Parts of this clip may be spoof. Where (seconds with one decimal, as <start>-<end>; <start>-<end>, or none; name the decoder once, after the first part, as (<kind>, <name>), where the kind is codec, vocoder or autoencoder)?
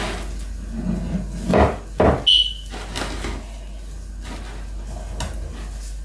none